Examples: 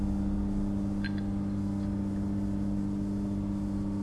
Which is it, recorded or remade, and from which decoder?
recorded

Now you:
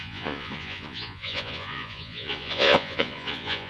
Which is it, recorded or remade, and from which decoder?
remade, vocoder, Vocos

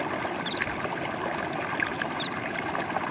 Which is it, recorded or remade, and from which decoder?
recorded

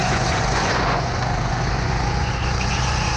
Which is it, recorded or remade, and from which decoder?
remade, vocoder, Vocos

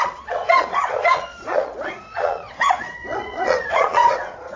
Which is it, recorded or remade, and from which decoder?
remade, vocoder, Vocos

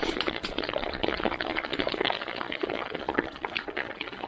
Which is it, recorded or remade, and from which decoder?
remade, vocoder, Vocos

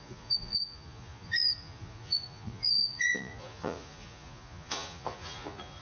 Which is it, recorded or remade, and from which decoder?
remade, vocoder, Vocos